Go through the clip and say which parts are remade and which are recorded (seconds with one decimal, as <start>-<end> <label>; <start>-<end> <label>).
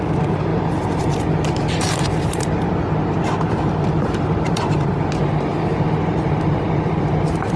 0.0-0.5 recorded; 0.5-5.1 remade; 5.1-5.5 recorded; 5.5-7.0 remade; 7.0-7.6 recorded